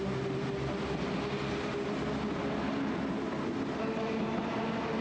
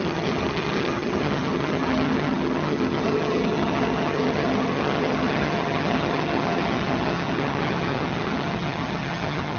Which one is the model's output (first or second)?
second